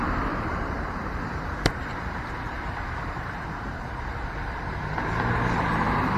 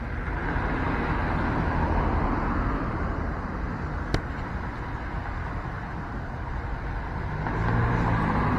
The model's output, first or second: first